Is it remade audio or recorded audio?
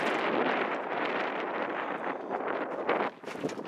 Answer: recorded